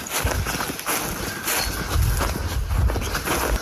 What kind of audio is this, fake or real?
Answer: real